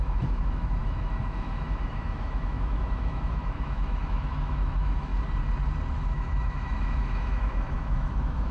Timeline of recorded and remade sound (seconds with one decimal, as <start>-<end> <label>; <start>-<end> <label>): 0.0-5.1 remade; 5.1-5.9 recorded; 5.9-8.5 remade